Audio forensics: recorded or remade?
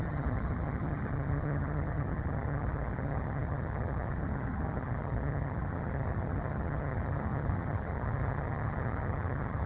remade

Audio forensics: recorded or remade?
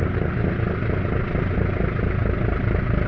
recorded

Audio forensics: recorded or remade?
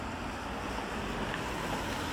recorded